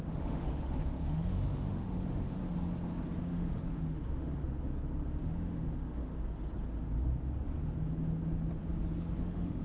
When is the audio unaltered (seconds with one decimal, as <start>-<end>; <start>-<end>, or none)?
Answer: 2.4-3.2; 4.4-5.2; 6.1-9.2